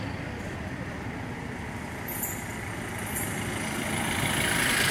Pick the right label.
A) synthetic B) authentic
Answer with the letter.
B